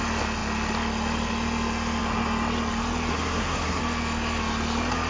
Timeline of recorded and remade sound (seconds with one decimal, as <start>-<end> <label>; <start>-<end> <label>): 0.0-3.1 recorded; 3.1-3.8 remade; 3.8-5.1 recorded